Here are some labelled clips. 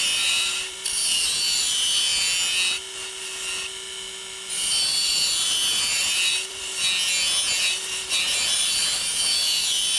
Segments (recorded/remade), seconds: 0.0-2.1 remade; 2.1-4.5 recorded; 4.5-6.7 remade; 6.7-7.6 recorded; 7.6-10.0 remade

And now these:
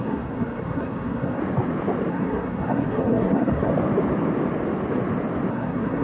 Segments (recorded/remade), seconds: 0.0-1.4 remade; 1.4-2.1 recorded; 2.1-3.7 remade; 3.7-5.5 recorded; 5.5-6.0 remade

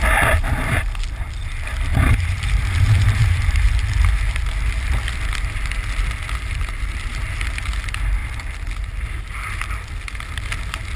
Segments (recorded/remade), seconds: 0.0-1.9 recorded; 1.9-3.7 remade; 3.7-11.0 recorded

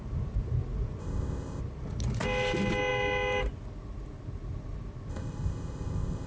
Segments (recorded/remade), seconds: 0.0-1.0 recorded; 1.0-1.6 remade; 1.6-5.1 recorded; 5.1-6.3 remade